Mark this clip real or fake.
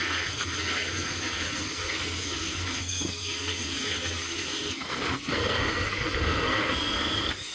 fake